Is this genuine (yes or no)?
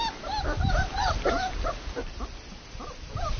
yes